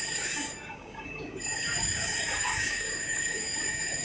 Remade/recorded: remade